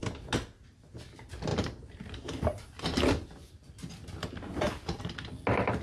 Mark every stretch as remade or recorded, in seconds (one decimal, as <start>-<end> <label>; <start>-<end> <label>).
0.0-5.8 recorded